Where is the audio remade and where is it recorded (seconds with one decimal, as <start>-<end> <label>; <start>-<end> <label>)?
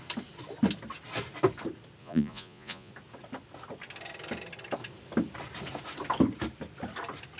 0.0-2.0 recorded; 2.0-2.9 remade; 2.9-7.4 recorded